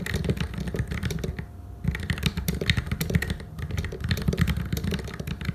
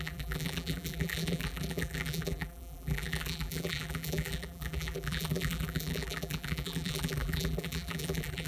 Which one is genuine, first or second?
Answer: first